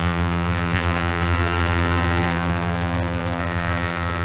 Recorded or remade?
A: remade